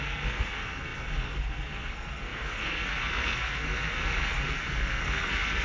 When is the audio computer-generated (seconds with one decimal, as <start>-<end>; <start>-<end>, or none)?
0.0-5.6